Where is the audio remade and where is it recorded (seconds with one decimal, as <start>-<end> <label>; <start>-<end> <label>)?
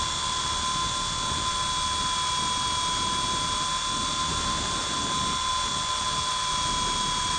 0.0-4.3 recorded; 4.3-4.9 remade; 4.9-7.4 recorded